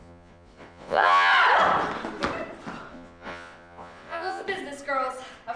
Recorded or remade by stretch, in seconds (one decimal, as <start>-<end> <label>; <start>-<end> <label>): 0.0-1.3 remade; 1.3-2.9 recorded; 2.9-4.4 remade; 4.4-5.6 recorded